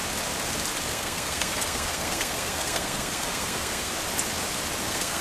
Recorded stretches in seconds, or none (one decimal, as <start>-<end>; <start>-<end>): 0.0-0.9; 3.9-4.8